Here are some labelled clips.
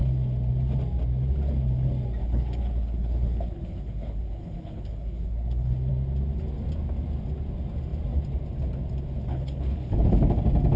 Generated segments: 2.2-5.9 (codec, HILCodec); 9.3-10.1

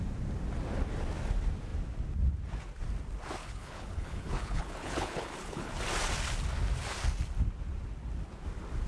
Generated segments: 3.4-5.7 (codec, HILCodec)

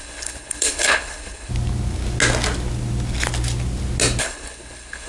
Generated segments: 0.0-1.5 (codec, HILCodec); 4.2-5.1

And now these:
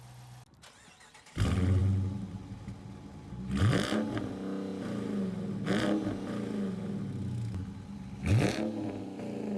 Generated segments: none